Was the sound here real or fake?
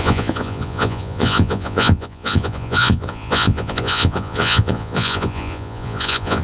fake